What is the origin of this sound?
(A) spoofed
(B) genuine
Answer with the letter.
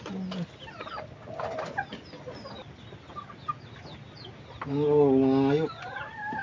B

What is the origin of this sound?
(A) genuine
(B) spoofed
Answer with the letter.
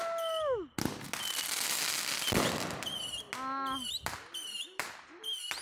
A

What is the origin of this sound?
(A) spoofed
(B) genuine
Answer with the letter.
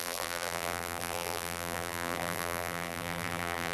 A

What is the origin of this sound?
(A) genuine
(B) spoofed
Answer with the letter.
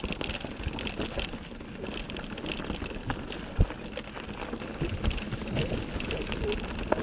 A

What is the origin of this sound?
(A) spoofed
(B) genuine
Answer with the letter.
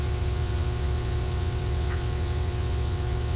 A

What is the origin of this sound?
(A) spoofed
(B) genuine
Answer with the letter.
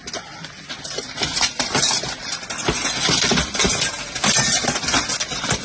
B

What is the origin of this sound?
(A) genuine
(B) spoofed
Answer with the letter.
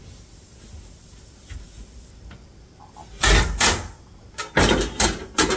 A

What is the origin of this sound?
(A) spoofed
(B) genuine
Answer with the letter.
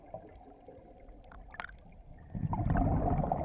B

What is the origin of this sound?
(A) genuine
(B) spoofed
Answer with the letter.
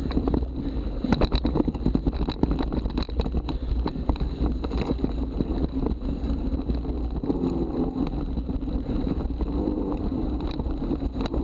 A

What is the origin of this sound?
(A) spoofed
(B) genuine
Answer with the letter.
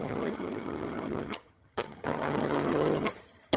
A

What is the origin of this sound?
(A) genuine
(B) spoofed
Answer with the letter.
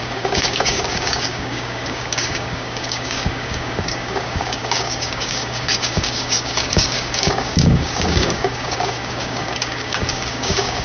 B